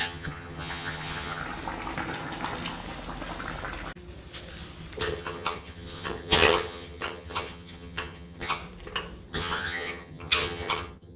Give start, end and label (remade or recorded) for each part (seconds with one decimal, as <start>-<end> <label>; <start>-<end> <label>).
0.0-1.4 remade; 1.4-5.0 recorded; 5.0-8.6 remade; 8.6-9.3 recorded; 9.3-11.2 remade